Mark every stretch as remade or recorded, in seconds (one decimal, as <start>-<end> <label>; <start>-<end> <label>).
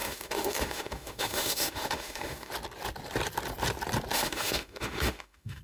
0.0-2.5 remade; 2.5-4.1 recorded; 4.1-5.6 remade